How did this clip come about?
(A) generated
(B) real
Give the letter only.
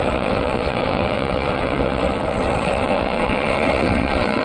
A